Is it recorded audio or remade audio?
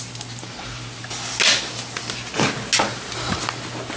recorded